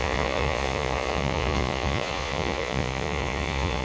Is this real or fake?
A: fake